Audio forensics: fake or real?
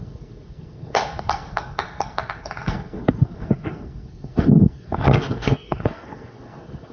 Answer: fake